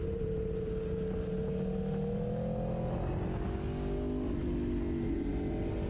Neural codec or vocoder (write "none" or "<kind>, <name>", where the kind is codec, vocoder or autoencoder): none